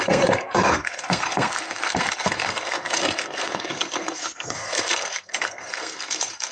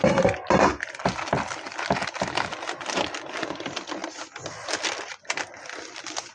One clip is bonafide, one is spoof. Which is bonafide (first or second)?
second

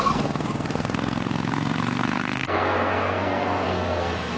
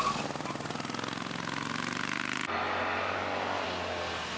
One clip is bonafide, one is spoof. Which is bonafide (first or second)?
second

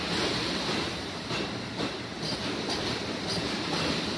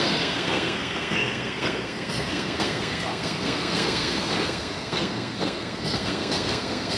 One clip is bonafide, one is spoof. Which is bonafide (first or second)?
first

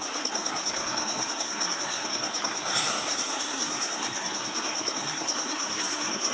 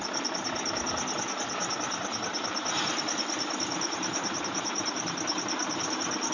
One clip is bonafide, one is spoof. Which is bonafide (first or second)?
second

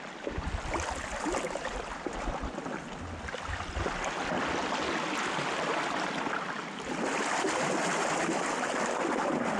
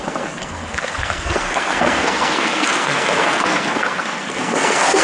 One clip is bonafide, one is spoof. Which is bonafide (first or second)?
first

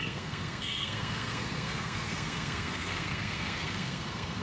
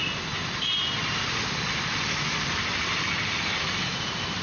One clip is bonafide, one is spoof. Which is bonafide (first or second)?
second